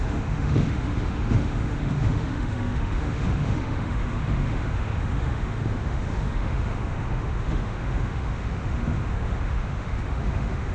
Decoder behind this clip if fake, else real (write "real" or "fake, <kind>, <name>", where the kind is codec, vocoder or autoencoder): fake, autoencoder, DAC-VAE